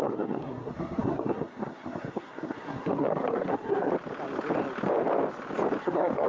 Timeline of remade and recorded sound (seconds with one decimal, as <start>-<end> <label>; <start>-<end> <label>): 0.0-3.9 remade; 3.9-5.8 recorded; 5.8-6.3 remade